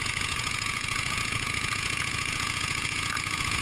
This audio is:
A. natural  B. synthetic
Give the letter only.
B